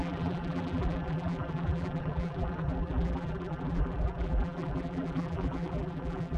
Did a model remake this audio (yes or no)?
yes